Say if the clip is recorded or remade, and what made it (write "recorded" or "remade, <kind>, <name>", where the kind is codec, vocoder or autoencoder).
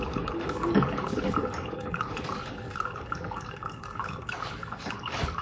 remade, codec, DAC